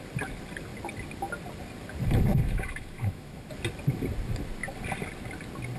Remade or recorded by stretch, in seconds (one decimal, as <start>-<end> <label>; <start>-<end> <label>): 0.0-2.4 recorded; 2.4-3.5 remade; 3.5-5.8 recorded